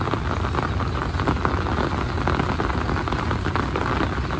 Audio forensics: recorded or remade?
recorded